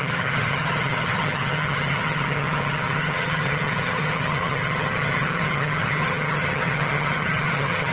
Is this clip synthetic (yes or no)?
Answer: yes